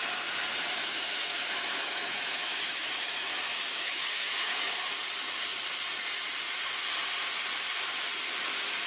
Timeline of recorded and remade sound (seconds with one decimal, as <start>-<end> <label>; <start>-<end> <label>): 0.0-0.8 recorded; 0.8-4.9 remade; 4.9-8.9 recorded